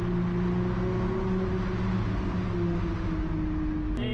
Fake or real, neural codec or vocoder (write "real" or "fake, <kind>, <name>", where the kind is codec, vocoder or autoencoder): real